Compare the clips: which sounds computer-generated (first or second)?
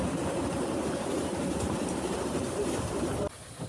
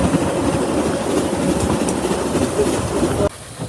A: first